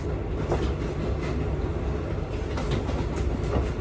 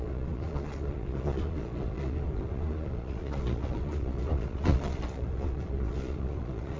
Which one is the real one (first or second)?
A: first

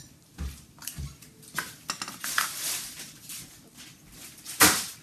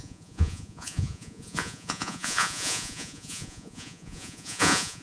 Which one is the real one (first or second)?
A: first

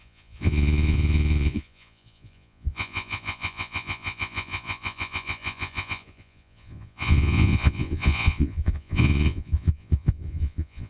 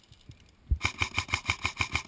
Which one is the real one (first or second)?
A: second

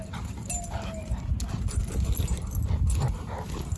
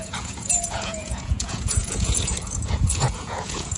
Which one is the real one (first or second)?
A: first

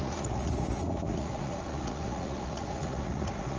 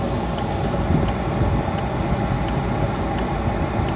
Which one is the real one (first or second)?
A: second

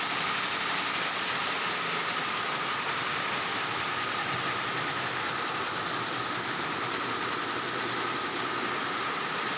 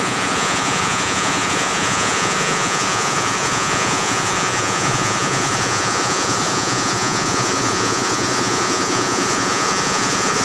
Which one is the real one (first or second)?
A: first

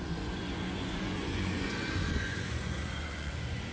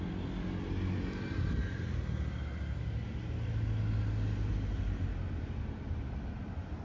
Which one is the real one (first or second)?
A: second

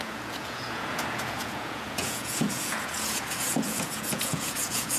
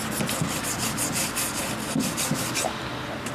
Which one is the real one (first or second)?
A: second